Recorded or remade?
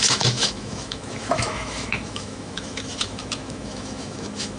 remade